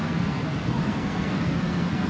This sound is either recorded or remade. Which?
remade